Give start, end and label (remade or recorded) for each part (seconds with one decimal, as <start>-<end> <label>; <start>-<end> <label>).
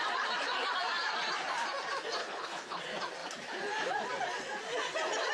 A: 0.0-2.2 recorded; 2.2-2.8 remade; 2.8-5.3 recorded